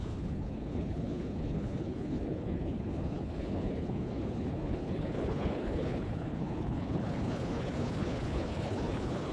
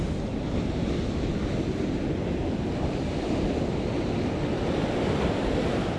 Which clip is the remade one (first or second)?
first